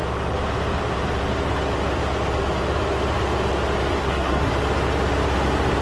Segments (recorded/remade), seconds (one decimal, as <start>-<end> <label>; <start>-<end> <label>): 0.0-4.0 recorded; 4.0-4.5 remade; 4.5-5.8 recorded